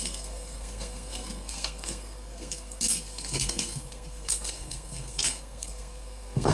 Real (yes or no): no